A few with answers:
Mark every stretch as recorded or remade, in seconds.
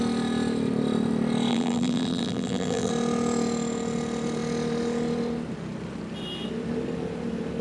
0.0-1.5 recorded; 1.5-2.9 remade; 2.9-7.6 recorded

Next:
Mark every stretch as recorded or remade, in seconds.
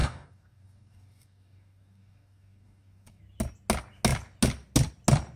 0.0-3.2 remade; 3.2-5.4 recorded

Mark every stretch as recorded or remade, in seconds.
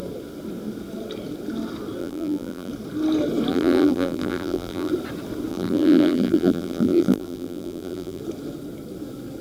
0.0-2.0 recorded; 2.0-2.7 remade; 2.7-3.5 recorded; 3.5-4.9 remade; 4.9-5.5 recorded; 5.5-8.2 remade; 8.2-9.4 recorded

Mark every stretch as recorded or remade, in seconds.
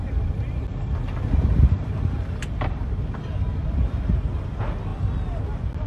0.0-4.9 recorded; 4.9-5.4 remade; 5.4-5.9 recorded